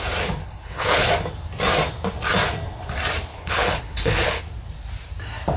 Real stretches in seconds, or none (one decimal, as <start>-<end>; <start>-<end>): 0.0-0.4; 1.1-3.3; 4.4-5.6